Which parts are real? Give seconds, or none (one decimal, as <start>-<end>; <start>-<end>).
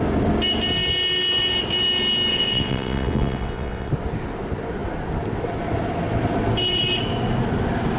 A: 0.0-2.3; 3.9-8.0